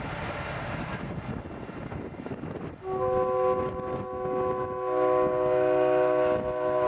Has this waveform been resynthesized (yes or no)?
no